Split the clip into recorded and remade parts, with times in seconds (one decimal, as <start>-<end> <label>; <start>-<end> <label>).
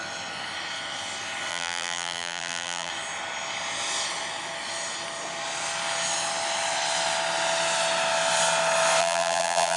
0.0-1.5 recorded; 1.5-2.9 remade; 2.9-9.0 recorded; 9.0-9.8 remade